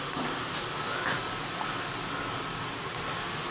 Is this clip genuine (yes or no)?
yes